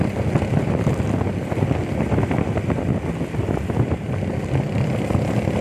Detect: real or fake real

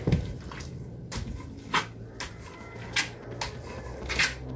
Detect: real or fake real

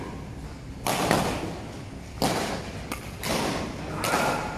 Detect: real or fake real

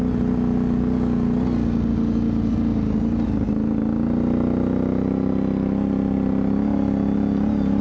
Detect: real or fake real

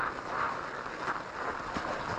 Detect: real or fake real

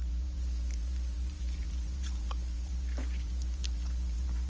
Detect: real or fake fake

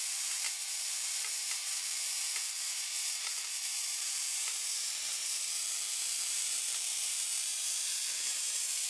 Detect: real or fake fake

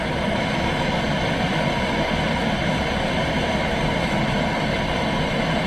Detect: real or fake fake